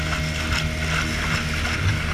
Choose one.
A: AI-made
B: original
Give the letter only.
B